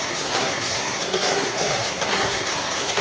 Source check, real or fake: fake